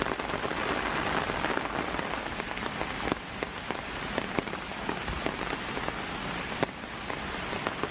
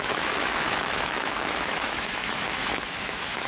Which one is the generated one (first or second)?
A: second